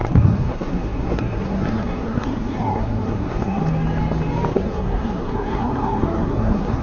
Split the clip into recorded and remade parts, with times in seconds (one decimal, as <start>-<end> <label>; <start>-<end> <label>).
0.0-3.6 remade; 3.6-4.5 recorded; 4.5-6.8 remade